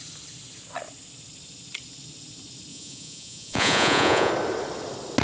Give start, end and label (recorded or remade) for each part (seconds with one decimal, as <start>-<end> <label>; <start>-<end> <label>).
0.0-2.7 recorded; 2.7-4.3 remade; 4.3-5.2 recorded